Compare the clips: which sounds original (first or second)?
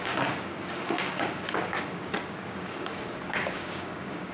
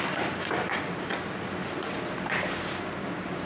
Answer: second